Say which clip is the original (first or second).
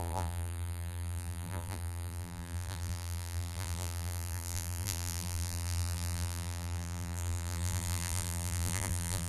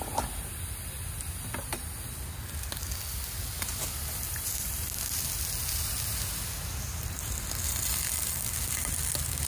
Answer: second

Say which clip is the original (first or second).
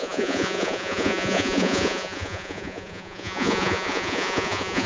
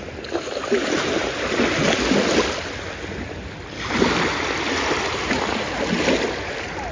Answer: second